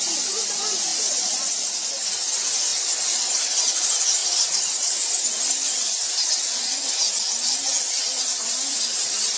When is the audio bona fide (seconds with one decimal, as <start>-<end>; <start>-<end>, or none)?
0.0-0.9; 1.7-4.2; 5.1-9.4

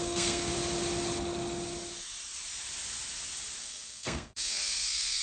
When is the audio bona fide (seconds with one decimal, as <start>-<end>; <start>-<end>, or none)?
0.5-3.6

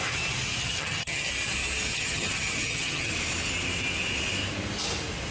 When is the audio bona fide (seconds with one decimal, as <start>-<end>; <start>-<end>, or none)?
0.0-0.6; 1.3-1.9; 3.1-5.3

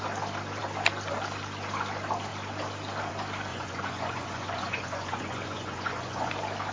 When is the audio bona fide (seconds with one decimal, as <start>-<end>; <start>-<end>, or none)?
0.0-3.5; 6.3-6.7

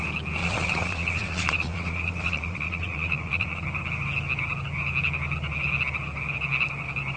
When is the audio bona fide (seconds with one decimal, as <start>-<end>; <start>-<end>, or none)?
0.0-0.4; 3.6-7.2

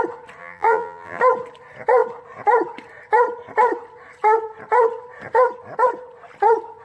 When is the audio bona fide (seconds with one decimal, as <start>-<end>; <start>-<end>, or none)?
0.0-0.4; 1.2-6.8

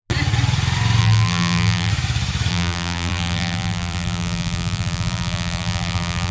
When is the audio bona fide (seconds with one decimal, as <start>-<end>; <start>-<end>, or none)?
0.0-1.0; 1.9-2.5

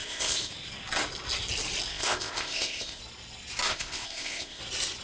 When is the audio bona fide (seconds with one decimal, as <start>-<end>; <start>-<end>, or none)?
0.5-1.9; 3.0-3.7; 4.6-5.0